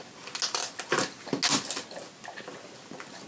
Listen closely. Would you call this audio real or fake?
real